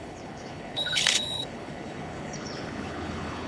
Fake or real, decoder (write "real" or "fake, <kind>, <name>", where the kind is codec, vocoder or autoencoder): fake, codec, HILCodec